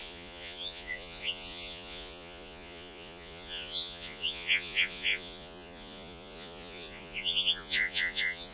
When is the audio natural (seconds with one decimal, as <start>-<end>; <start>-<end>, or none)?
none